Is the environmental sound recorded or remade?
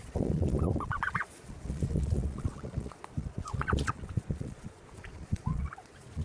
remade